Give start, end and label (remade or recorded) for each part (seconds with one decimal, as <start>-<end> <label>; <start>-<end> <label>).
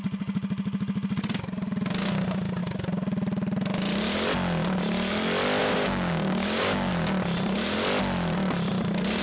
0.0-5.6 recorded; 5.6-6.9 remade; 6.9-9.2 recorded